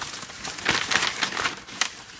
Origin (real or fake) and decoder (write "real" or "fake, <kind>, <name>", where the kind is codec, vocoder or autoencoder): real